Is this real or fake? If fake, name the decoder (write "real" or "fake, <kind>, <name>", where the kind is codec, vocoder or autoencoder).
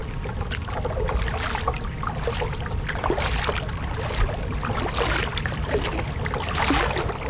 real